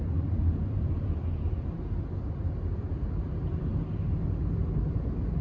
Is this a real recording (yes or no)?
yes